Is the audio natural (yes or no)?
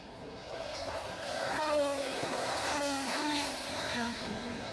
no